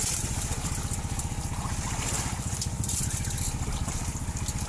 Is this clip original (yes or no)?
yes